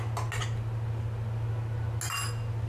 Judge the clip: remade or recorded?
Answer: recorded